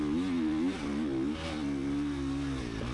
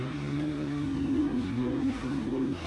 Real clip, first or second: first